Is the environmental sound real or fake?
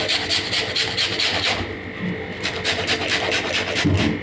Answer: real